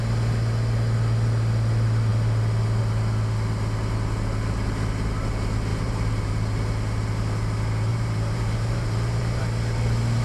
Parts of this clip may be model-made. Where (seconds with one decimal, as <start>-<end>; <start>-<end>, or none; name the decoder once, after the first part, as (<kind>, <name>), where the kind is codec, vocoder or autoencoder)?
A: 5.7-6.3 (vocoder, BigVGAN v2); 7.9-9.4

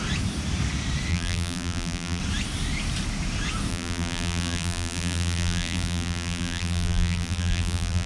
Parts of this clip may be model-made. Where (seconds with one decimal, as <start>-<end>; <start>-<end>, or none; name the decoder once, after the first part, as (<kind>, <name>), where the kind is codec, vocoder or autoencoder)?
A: 1.1-2.2 (vocoder, BigVGAN v2); 3.7-8.1

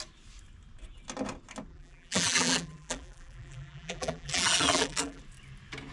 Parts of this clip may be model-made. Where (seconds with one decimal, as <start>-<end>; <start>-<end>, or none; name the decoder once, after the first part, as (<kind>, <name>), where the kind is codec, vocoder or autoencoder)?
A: 1.7-5.2 (vocoder, BigVGAN v2)

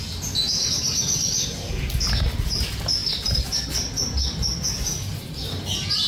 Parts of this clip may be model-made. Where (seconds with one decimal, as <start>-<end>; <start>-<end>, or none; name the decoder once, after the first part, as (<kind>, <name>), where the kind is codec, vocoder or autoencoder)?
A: none

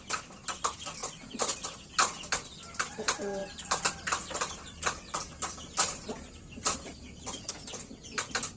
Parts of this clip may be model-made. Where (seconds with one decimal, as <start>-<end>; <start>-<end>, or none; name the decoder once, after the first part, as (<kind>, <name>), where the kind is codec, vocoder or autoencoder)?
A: 3.4-7.5 (vocoder, BigVGAN v2)

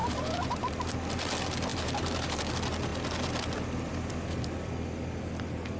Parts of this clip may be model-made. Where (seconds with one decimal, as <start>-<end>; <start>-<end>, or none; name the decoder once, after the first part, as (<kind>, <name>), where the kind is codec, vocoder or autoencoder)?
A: 0.0-0.9 (vocoder, BigVGAN v2); 1.7-2.5

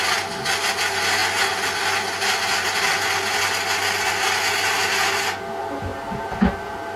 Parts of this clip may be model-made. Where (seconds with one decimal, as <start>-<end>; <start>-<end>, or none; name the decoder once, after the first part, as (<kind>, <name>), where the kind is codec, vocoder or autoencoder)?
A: none

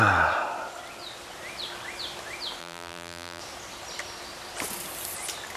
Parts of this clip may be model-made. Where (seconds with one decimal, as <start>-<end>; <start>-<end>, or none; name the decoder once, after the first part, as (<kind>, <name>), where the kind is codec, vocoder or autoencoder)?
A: 2.6-3.4 (vocoder, BigVGAN v2)